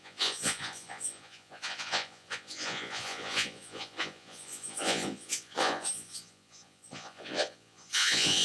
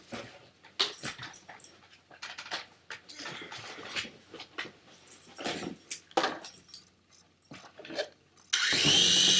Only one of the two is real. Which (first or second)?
second